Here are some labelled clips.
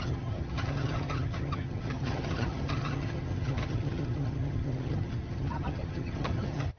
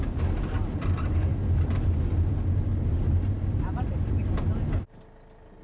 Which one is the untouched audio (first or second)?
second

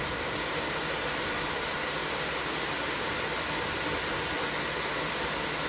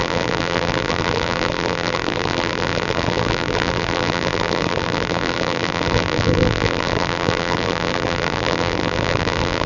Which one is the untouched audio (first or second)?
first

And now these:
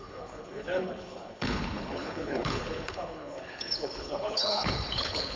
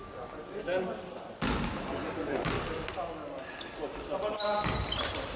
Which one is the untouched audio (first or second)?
second